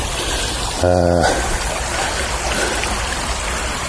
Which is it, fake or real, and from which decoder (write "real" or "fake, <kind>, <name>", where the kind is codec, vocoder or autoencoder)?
real